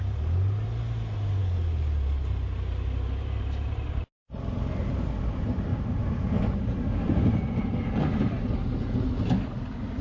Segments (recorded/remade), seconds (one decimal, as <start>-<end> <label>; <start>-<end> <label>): 0.0-5.7 recorded; 5.7-9.3 remade; 9.3-10.0 recorded